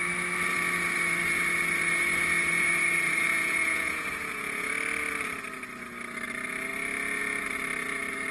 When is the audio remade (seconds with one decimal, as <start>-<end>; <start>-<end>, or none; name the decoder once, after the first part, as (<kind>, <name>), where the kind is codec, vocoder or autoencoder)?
3.3-4.7 (vocoder, Vocos)

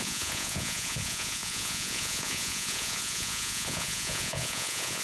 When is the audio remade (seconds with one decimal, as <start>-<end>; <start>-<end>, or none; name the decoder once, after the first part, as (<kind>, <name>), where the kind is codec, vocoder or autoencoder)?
0.0-5.0 (vocoder, Vocos)

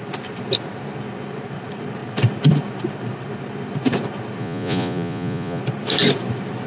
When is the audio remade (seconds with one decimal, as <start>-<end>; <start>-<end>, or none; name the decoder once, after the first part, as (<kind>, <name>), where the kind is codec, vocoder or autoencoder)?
4.4-5.6 (vocoder, Vocos)

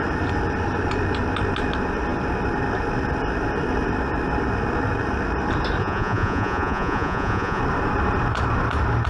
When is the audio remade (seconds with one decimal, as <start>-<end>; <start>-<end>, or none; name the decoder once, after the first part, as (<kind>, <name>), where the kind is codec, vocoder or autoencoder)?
5.8-7.6 (vocoder, Vocos)

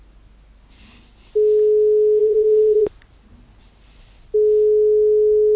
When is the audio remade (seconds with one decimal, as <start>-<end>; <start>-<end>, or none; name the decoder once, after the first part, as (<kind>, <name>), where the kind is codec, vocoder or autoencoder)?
2.2-3.1 (vocoder, Vocos)

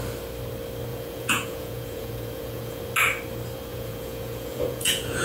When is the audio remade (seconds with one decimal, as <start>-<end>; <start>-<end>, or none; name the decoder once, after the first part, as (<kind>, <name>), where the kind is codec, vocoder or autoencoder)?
0.9-2.8 (vocoder, Vocos); 3.7-5.2

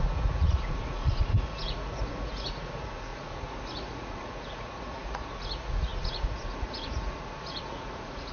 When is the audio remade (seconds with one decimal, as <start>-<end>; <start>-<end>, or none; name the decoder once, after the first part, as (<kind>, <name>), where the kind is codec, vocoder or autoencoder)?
0.0-8.3 (vocoder, Vocos)

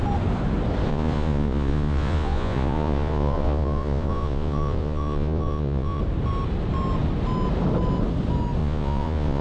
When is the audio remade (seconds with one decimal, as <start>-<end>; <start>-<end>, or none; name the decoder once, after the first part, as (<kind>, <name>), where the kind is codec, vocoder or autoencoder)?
0.9-6.0 (vocoder, Vocos); 8.6-9.4